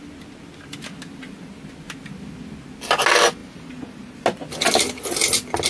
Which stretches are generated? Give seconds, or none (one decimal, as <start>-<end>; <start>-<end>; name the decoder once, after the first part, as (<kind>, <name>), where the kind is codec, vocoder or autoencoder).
none